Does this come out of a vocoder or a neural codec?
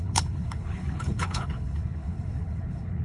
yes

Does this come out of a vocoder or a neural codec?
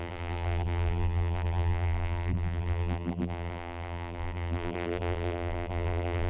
yes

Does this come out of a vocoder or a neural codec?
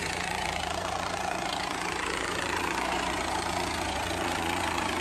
yes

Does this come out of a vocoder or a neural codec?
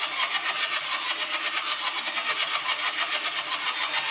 no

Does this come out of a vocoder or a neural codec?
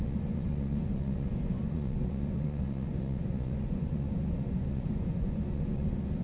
yes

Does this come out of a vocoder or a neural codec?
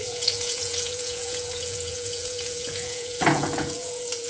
yes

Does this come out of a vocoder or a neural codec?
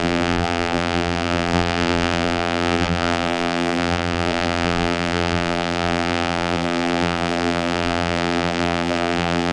yes